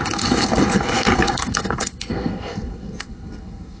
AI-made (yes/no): yes